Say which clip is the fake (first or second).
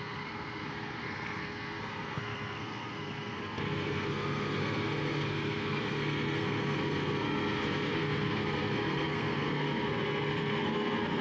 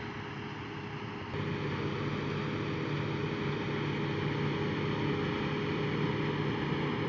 first